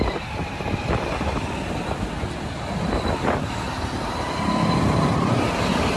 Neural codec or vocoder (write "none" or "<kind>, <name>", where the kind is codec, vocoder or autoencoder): none